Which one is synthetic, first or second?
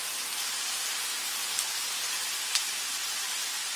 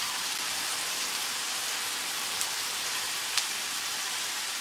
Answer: second